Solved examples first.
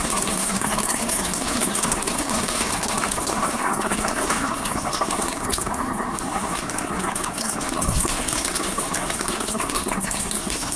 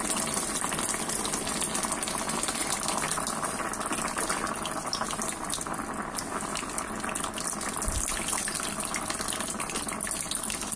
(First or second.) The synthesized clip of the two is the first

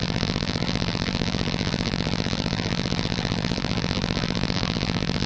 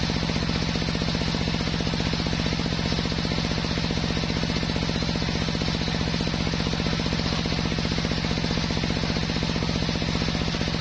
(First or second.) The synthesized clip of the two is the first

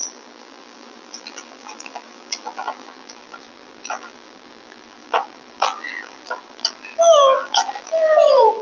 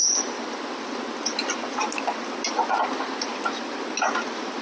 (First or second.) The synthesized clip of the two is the first